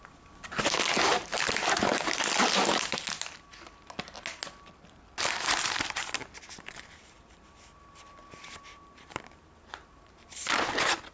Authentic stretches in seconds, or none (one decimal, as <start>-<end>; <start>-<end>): 0.0-1.1; 2.2-7.0; 10.6-11.1